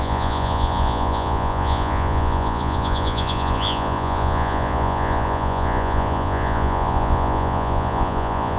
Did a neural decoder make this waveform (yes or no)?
yes